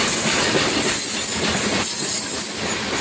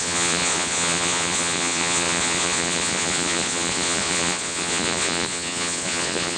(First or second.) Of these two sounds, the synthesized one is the second